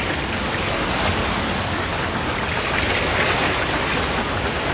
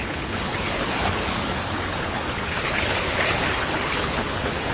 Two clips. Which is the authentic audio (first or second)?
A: first